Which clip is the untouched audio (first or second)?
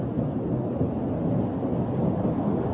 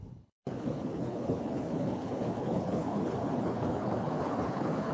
first